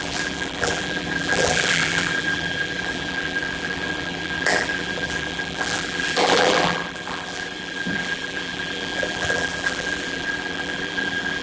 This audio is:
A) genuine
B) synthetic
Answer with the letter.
B